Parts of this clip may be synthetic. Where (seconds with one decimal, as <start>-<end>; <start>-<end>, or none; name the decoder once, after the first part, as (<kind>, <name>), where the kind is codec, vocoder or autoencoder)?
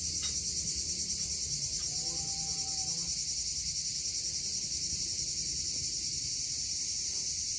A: 0.0-1.9 (vocoder, BigVGAN v2); 4.9-7.6